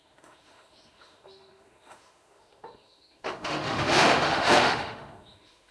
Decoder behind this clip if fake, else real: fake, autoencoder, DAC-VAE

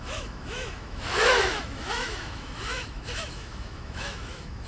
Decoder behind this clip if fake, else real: fake, autoencoder, DAC-VAE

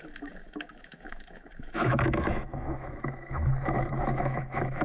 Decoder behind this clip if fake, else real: fake, autoencoder, DAC-VAE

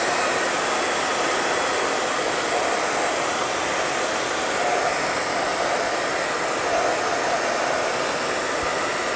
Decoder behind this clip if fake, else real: real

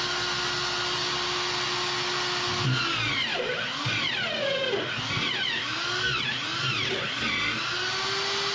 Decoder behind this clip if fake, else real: real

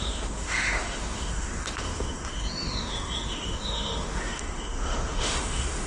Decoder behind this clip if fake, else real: fake, autoencoder, DAC-VAE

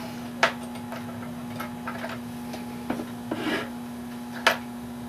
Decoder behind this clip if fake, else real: real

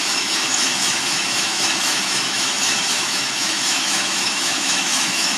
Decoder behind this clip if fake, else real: fake, autoencoder, DAC-VAE